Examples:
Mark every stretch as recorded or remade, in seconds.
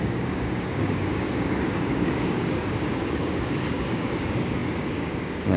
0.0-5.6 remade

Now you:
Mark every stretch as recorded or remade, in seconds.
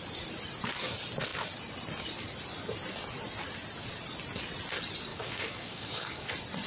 0.0-5.1 recorded; 5.1-6.3 remade; 6.3-6.7 recorded